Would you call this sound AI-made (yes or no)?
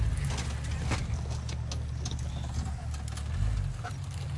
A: no